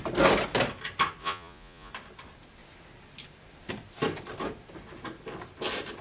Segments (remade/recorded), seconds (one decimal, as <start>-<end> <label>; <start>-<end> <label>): 0.0-1.2 recorded; 1.2-1.9 remade; 1.9-6.0 recorded